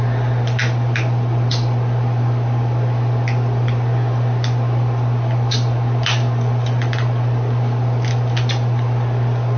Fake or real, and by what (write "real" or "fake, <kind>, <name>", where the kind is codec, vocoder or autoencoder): real